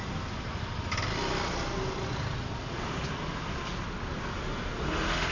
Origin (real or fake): real